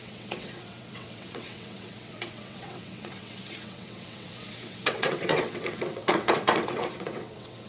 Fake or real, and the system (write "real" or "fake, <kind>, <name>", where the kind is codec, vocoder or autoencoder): fake, vocoder, WaveNeXt